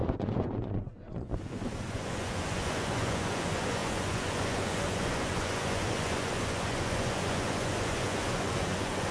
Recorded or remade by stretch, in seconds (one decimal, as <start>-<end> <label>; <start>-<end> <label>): 0.0-9.1 remade